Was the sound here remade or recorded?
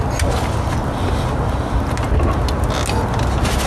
recorded